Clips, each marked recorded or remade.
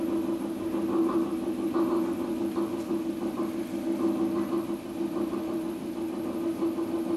recorded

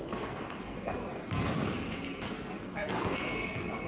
remade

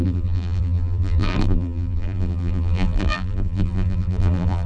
remade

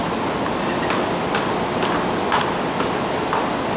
recorded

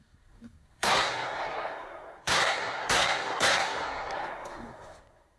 remade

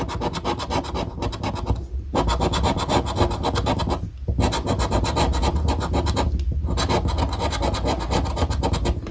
recorded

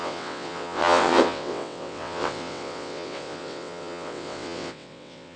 remade